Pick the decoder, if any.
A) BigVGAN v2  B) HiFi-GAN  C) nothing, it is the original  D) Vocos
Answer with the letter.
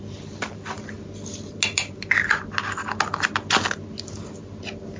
C